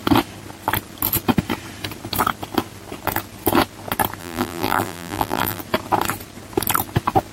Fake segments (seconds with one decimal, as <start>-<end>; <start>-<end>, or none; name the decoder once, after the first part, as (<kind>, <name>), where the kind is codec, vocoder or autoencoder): 4.2-5.6 (vocoder, BigVGAN v2)